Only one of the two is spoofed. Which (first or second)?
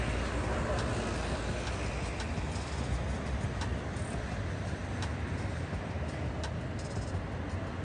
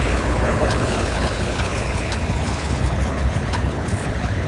second